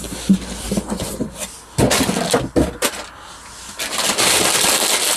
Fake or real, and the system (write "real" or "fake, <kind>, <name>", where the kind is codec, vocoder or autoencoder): real